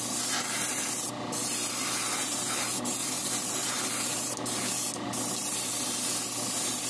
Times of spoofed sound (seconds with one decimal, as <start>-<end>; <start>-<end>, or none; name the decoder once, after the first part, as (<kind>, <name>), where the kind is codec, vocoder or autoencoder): 3.0-3.9 (vocoder, BigVGAN v2)